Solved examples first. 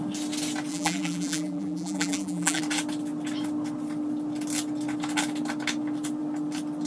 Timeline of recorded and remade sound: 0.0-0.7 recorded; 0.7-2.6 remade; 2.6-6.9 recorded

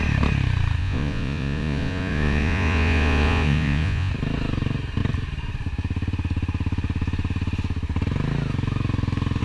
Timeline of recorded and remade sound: 0.0-0.8 recorded; 0.8-4.1 remade; 4.1-9.4 recorded

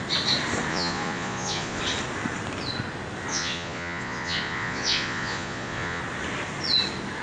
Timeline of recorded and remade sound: 0.0-0.7 recorded; 0.7-1.8 remade; 1.8-3.3 recorded; 3.3-6.0 remade; 6.0-7.2 recorded